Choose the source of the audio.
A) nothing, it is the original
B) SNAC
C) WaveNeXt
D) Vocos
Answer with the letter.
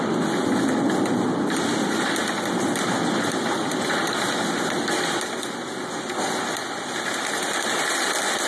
A